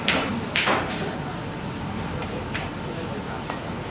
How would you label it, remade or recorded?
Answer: recorded